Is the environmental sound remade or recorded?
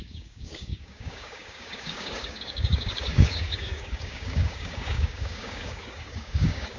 remade